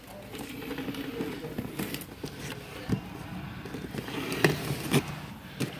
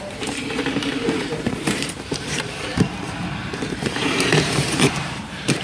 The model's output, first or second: second